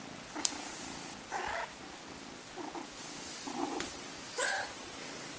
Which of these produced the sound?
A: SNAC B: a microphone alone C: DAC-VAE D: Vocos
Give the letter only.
B